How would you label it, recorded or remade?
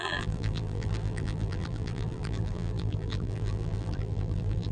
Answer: remade